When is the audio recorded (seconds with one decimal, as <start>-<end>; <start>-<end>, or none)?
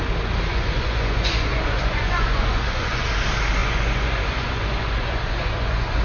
0.0-0.5; 3.1-3.6